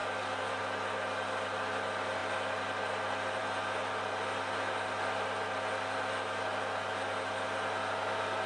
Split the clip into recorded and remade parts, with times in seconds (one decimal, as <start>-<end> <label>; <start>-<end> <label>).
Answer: 0.0-8.5 recorded